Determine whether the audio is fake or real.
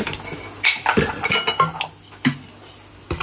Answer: real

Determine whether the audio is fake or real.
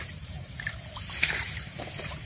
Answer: fake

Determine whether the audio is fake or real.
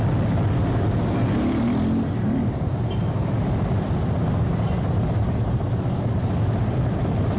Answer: real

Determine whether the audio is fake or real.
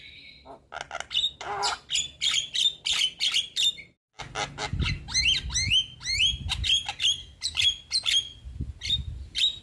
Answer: real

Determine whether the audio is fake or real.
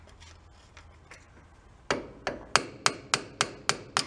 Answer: real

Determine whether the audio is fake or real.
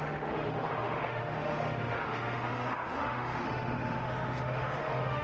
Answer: fake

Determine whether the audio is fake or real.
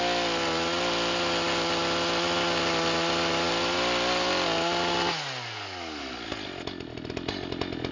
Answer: real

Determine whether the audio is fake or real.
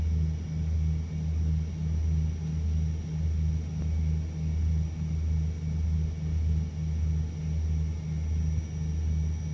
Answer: real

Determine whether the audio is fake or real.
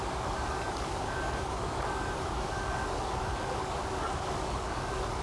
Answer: fake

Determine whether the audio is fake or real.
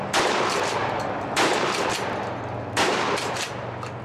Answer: real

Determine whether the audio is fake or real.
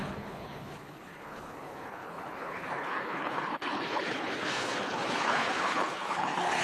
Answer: fake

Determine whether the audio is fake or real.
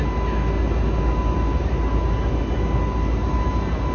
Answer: real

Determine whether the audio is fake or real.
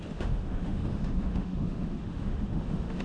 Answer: fake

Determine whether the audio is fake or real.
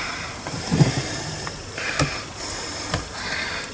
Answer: fake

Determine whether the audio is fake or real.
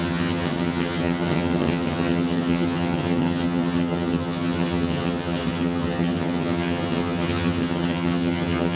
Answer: fake